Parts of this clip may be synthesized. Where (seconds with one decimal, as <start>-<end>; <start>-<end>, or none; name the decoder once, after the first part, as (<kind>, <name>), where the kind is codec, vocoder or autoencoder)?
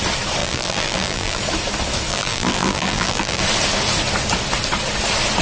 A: 0.4-1.4 (vocoder, BigVGAN v2); 2.1-3.4